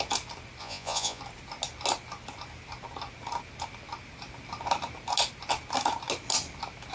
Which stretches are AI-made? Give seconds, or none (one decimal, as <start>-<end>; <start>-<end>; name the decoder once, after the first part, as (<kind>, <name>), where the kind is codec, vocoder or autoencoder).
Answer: 0.6-1.2 (vocoder, Vocos)